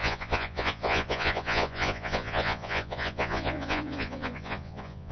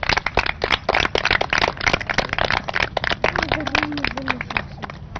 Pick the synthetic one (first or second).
first